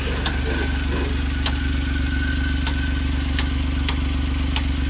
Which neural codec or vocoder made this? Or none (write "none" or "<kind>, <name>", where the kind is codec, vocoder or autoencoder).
none